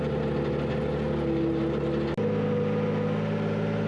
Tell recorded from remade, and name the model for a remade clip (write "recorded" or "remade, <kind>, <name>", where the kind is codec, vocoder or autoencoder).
recorded